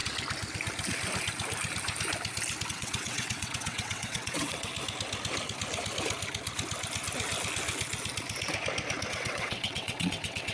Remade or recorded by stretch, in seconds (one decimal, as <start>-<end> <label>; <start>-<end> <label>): 0.0-2.7 recorded; 2.7-4.7 remade; 4.7-9.1 recorded; 9.1-10.5 remade